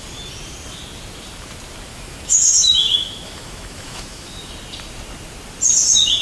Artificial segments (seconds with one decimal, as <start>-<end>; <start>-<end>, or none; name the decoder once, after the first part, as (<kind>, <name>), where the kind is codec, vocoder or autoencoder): 1.9-4.5 (autoencoder, DAC-VAE)